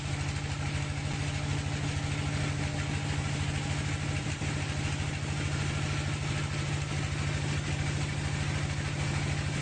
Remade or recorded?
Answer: recorded